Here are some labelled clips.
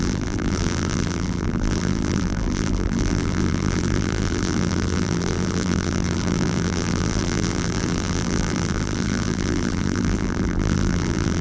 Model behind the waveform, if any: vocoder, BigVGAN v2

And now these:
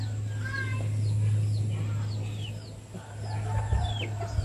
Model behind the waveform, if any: none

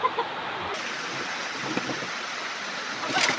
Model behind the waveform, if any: none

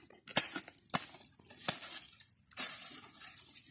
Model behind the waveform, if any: none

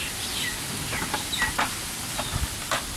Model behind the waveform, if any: none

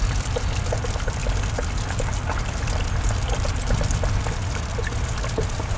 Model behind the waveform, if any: none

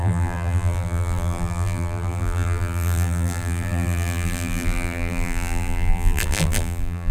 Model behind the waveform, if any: vocoder, BigVGAN v2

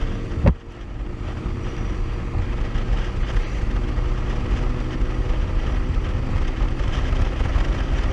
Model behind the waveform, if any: none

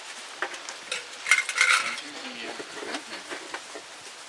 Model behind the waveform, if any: none